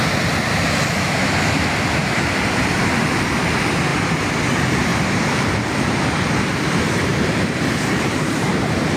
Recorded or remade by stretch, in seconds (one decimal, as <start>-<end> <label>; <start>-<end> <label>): 0.0-2.0 recorded; 2.0-3.1 remade; 3.1-3.9 recorded; 3.9-4.4 remade; 4.4-4.9 recorded; 4.9-5.4 remade; 5.4-7.1 recorded; 7.1-8.5 remade; 8.5-9.0 recorded